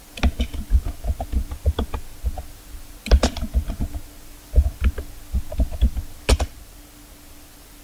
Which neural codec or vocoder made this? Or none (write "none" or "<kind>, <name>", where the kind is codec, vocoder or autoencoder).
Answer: none